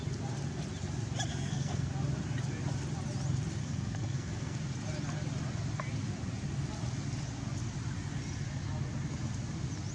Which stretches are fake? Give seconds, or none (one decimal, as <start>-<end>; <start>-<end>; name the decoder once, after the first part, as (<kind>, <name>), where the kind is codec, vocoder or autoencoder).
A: 1.3-1.9 (codec, SNAC); 3.6-4.6